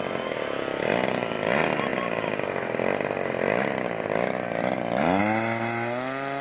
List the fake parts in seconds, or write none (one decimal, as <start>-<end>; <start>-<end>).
none